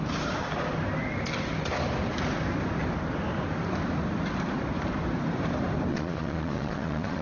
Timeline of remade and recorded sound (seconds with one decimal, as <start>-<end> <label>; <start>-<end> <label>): 0.0-5.9 recorded; 5.9-7.2 remade